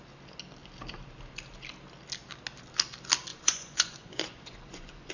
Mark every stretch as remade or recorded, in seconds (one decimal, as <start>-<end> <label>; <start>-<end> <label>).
0.0-3.3 recorded; 3.3-5.1 remade